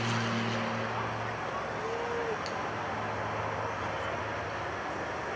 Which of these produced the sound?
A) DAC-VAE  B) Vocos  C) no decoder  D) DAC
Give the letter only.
C